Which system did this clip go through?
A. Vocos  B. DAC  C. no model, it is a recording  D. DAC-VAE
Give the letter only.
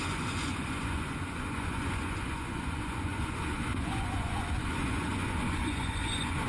A